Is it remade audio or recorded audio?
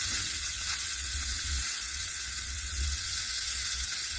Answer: remade